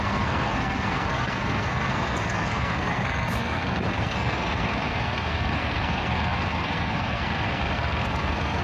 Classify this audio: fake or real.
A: fake